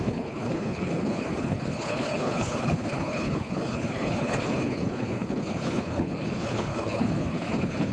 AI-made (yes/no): yes